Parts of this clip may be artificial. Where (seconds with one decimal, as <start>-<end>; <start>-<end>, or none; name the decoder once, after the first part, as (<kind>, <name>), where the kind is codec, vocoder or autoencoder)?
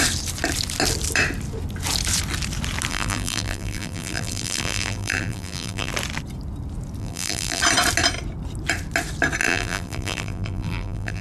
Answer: 2.9-5.9 (vocoder, BigVGAN v2); 7.0-7.6; 9.4-11.2